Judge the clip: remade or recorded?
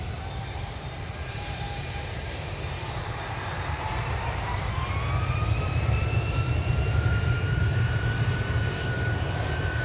remade